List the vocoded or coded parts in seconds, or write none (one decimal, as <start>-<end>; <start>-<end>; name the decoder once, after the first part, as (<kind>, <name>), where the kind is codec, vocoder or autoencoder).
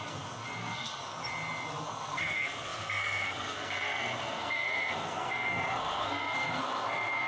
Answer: 0.0-1.2 (codec, SNAC); 1.8-7.3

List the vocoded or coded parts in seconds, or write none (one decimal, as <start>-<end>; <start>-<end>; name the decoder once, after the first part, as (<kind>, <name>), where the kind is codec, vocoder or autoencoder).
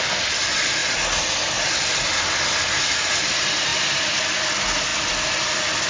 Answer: none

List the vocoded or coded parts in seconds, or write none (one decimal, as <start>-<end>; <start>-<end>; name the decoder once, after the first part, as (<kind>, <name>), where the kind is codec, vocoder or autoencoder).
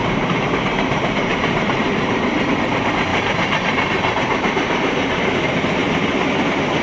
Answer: 1.3-2.5 (vocoder, BigVGAN v2); 3.1-5.3